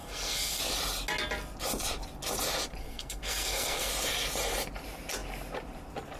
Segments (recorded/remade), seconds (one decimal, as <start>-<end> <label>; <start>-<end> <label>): 0.0-0.6 remade; 0.6-2.8 recorded; 2.8-3.9 remade; 3.9-6.2 recorded